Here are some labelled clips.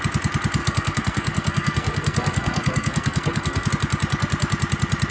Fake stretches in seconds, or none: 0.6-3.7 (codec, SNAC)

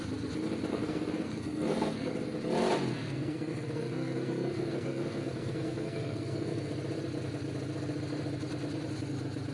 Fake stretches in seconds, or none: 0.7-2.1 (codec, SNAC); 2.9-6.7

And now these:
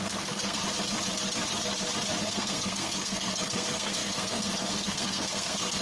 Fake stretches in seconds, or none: 0.0-0.6 (codec, SNAC); 2.2-5.8

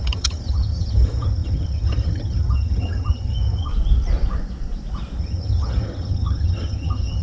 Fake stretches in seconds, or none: 0.0-3.7 (vocoder, HiFi-GAN); 5.2-7.2

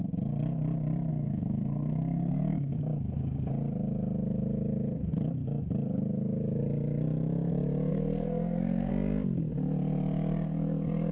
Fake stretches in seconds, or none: 1.1-2.8 (codec, SNAC); 7.9-8.9

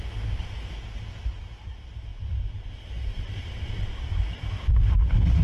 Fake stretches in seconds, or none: 2.1-2.7 (vocoder, BigVGAN v2); 3.1-4.5